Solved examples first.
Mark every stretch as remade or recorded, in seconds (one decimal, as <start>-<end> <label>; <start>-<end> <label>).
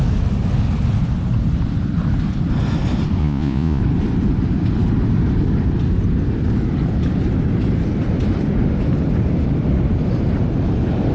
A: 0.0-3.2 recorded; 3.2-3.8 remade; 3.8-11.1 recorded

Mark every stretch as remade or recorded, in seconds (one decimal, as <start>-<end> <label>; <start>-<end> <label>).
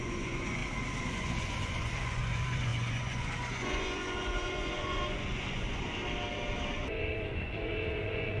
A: 0.0-0.6 remade; 0.6-1.1 recorded; 1.1-6.0 remade; 6.0-6.7 recorded; 6.7-8.4 remade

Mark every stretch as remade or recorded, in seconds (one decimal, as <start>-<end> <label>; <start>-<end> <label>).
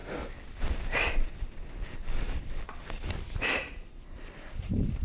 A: 0.0-3.0 recorded; 3.0-5.0 remade